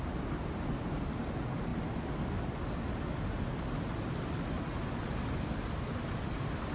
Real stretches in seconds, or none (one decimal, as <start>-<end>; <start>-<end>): 0.0-6.7